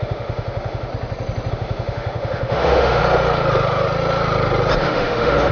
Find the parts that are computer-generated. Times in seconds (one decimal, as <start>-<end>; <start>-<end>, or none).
0.0-0.9; 1.5-3.0; 4.8-5.5